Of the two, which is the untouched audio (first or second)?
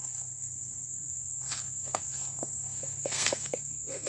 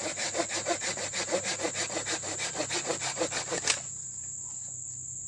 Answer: second